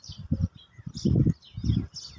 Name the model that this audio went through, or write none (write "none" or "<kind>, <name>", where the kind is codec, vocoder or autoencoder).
none